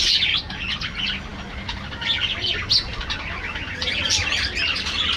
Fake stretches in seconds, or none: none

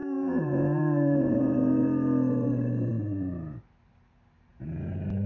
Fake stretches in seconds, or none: 0.0-1.5 (vocoder, Vocos); 4.5-5.3